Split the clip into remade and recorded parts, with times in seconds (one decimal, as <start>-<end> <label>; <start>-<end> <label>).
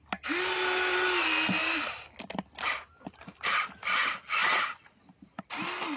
0.0-6.0 recorded